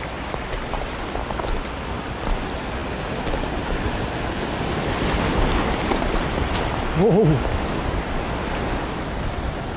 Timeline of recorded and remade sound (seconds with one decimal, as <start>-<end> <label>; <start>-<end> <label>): 0.0-9.8 recorded